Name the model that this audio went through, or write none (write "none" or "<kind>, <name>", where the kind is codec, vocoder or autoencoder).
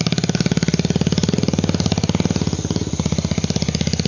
none